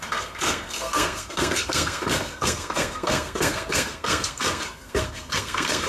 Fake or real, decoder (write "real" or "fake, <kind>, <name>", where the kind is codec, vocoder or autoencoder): fake, codec, SNAC